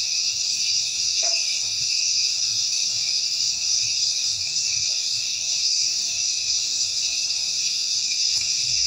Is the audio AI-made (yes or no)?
yes